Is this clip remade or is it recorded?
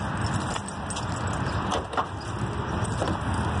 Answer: recorded